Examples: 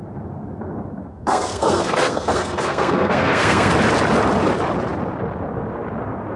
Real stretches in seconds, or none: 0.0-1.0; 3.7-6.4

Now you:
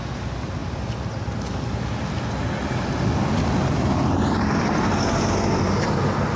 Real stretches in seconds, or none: 0.0-6.4

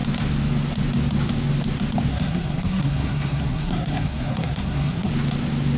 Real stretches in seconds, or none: 0.0-2.1; 5.1-5.8

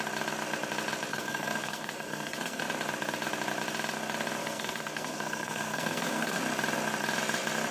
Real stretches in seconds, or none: 0.0-1.1; 2.6-4.4; 6.4-7.7

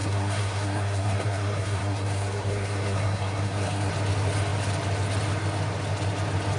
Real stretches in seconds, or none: 3.9-6.6